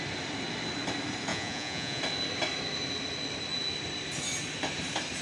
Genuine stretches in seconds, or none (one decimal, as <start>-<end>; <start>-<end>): 0.0-1.3; 2.0-5.2